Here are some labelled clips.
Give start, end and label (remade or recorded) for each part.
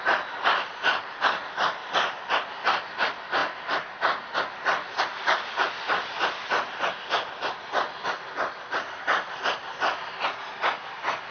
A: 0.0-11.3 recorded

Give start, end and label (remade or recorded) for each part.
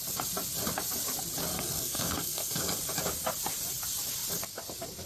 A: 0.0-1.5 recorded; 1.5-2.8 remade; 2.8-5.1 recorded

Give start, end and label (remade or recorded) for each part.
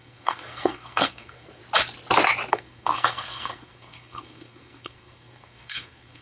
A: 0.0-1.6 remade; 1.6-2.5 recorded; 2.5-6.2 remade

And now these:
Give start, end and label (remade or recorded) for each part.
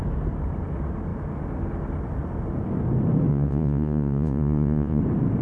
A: 0.0-3.3 recorded; 3.3-5.0 remade; 5.0-5.4 recorded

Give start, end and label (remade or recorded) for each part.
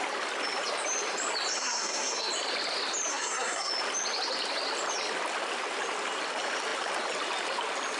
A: 0.0-1.6 recorded; 1.6-2.3 remade; 2.3-3.1 recorded; 3.1-3.7 remade; 3.7-8.0 recorded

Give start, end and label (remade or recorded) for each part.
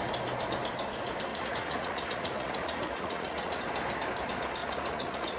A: 0.0-1.3 recorded; 1.3-3.6 remade; 3.6-4.6 recorded; 4.6-5.4 remade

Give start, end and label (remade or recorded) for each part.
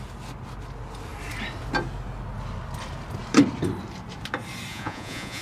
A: 0.0-4.7 recorded; 4.7-5.4 remade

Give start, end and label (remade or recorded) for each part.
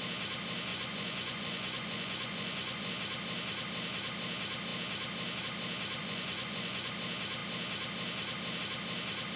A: 0.0-0.7 recorded; 0.7-2.9 remade; 2.9-6.0 recorded; 6.0-6.9 remade; 6.9-9.4 recorded